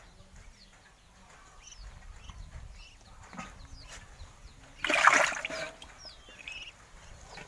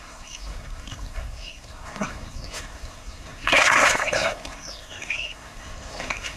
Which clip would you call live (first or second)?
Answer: first